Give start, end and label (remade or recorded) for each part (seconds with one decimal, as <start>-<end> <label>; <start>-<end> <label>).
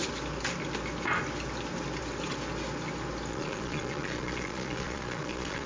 0.0-3.3 recorded; 3.3-5.7 remade